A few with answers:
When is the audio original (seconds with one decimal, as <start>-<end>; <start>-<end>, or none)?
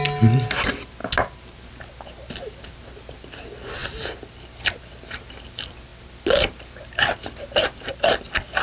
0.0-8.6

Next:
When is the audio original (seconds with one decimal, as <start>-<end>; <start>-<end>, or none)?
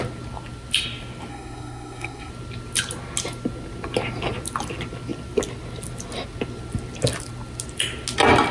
0.0-1.3; 2.3-8.5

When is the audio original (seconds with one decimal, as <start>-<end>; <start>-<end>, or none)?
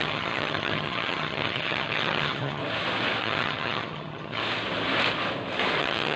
2.6-3.2; 4.4-5.8